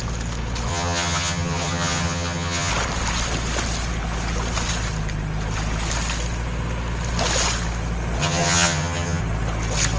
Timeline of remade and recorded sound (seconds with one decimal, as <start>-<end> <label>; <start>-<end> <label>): 0.0-0.7 recorded; 0.7-2.7 remade; 2.7-8.2 recorded; 8.2-9.2 remade; 9.2-10.0 recorded